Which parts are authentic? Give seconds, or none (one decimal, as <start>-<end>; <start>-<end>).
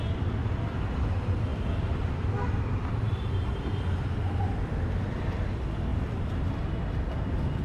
0.0-0.4; 1.1-1.5; 3.8-5.9; 6.9-7.6